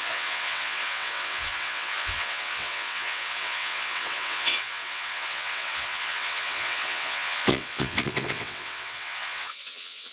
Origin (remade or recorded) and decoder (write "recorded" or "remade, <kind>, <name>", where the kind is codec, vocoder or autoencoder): remade, vocoder, WaveNeXt